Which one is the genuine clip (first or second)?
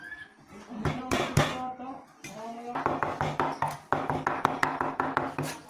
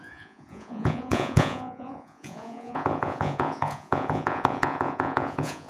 first